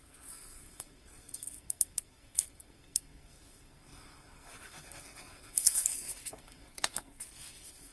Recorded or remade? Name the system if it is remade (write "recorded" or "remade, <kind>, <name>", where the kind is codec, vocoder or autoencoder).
remade, codec, SNAC